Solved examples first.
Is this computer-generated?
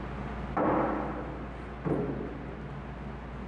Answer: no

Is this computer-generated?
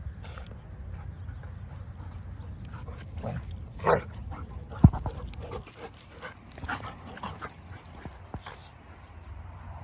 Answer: no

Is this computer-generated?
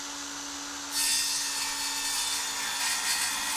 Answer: no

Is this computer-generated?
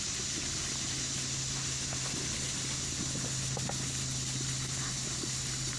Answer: no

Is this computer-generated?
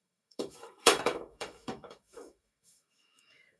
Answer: yes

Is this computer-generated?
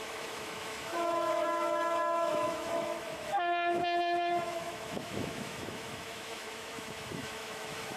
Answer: yes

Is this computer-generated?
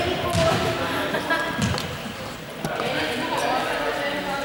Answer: no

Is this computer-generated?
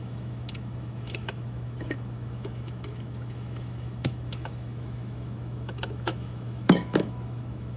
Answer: yes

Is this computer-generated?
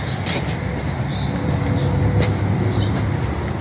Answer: no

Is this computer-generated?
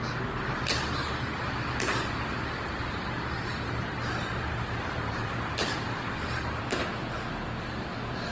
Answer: no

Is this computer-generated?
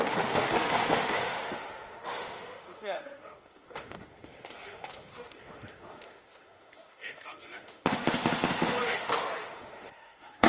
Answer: yes